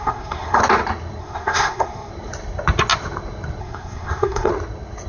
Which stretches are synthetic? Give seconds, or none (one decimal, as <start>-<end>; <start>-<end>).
0.0-0.6; 1.2-2.1; 3.6-4.5